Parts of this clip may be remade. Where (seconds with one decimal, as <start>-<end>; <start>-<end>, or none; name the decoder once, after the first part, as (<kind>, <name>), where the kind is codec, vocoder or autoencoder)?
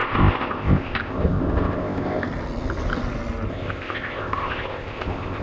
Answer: 0.0-2.3 (codec, ZipCodec); 3.5-5.4